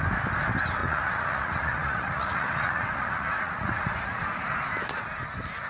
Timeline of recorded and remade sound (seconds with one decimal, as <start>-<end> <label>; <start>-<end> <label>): 0.0-0.8 recorded; 0.8-4.2 remade; 4.2-5.7 recorded